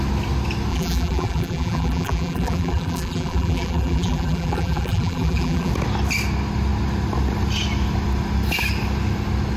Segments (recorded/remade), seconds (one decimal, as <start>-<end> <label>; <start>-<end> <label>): 0.0-0.7 recorded; 0.7-5.7 remade; 5.7-9.6 recorded

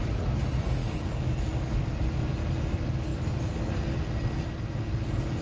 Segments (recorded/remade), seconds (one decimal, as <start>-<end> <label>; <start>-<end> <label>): 0.0-0.8 recorded; 0.8-1.5 remade; 1.5-5.4 recorded

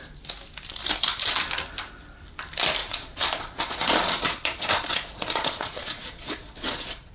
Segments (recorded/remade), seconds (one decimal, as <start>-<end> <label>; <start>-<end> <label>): 0.0-2.8 recorded; 2.8-7.1 remade

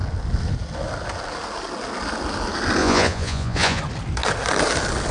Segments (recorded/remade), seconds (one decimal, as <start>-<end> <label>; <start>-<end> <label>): 0.0-2.8 recorded; 2.8-3.8 remade; 3.8-5.1 recorded

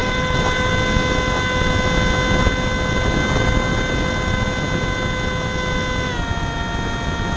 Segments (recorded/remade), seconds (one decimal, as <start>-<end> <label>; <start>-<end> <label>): 0.0-0.7 remade; 0.7-7.4 recorded

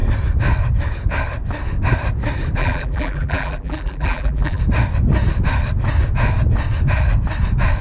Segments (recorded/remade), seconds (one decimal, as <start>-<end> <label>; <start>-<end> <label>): 0.0-2.6 recorded; 2.6-4.6 remade; 4.6-7.8 recorded